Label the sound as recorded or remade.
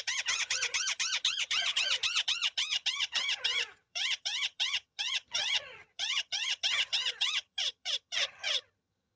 remade